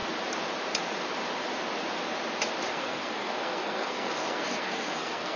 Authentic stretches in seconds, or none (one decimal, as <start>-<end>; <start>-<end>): 0.0-2.7